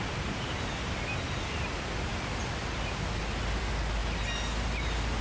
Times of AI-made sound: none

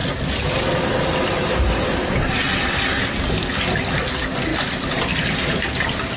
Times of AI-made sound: none

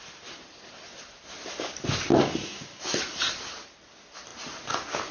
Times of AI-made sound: 2.1-2.8